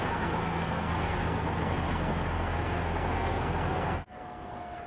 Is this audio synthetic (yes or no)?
yes